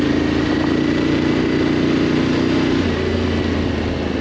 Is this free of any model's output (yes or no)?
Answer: yes